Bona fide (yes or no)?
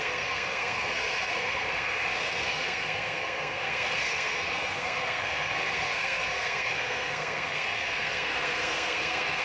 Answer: no